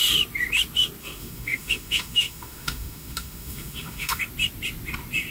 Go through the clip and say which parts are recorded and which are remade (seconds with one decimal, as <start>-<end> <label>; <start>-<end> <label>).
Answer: 0.0-1.0 recorded; 1.0-4.2 remade; 4.2-5.3 recorded